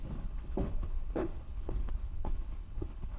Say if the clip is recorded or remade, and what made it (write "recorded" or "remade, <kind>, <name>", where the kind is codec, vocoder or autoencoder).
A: remade, codec, HILCodec